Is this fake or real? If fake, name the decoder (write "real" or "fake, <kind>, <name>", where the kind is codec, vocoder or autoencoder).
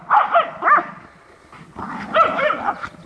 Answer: real